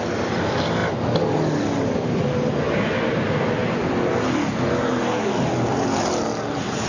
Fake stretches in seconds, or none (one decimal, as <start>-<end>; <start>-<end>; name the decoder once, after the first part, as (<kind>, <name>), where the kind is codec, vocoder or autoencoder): none